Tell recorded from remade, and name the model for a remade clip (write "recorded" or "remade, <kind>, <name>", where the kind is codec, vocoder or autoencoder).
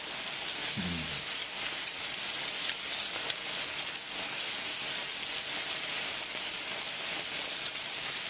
recorded